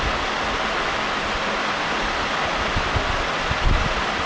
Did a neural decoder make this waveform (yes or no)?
no